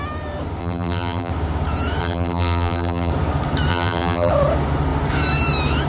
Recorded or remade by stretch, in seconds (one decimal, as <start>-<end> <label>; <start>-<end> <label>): 0.0-0.6 recorded; 0.6-1.3 remade; 1.3-2.0 recorded; 2.0-3.1 remade; 3.1-3.7 recorded; 3.7-4.3 remade; 4.3-5.9 recorded